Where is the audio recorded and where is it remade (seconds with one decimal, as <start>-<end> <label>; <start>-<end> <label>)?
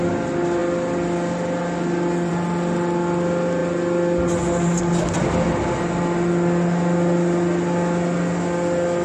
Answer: 0.0-9.0 recorded